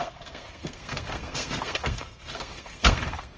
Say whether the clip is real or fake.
fake